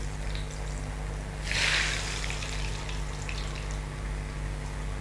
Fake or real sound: real